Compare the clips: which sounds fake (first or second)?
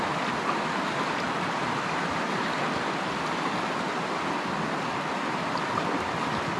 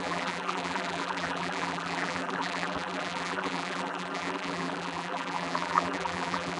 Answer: second